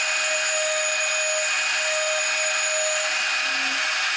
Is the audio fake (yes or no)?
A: no